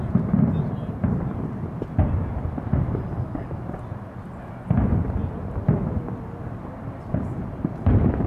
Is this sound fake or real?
real